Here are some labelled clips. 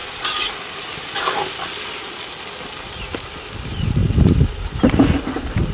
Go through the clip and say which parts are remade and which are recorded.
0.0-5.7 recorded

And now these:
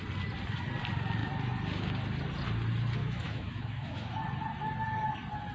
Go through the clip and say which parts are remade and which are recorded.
0.0-3.0 recorded; 3.0-4.1 remade; 4.1-5.5 recorded

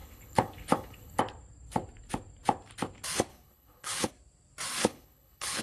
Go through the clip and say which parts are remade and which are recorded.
0.0-1.2 remade; 1.2-3.3 recorded; 3.3-4.1 remade; 4.1-4.8 recorded; 4.8-5.6 remade

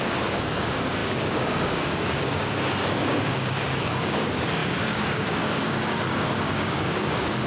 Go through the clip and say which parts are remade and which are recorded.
0.0-7.5 remade